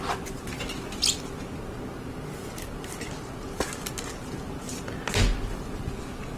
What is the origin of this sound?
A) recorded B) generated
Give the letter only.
A